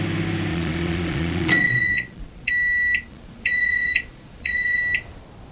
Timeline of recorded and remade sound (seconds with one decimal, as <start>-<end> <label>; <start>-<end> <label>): 0.0-0.5 recorded; 0.5-2.5 remade; 2.5-3.1 recorded; 3.1-4.8 remade; 4.8-5.5 recorded